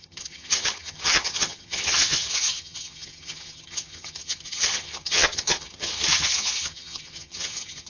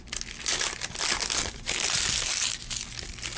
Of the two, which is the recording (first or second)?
second